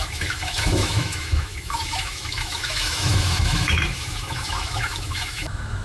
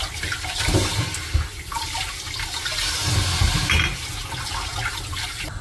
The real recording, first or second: second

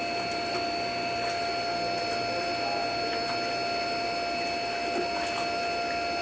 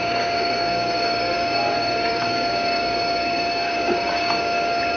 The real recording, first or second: first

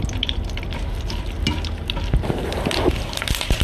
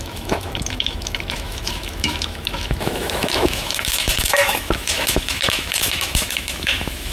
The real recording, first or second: first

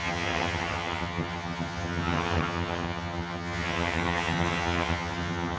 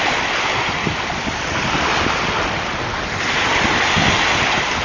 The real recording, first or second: second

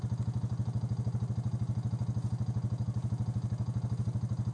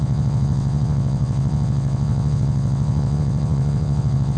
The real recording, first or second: first